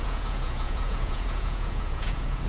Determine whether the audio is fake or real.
fake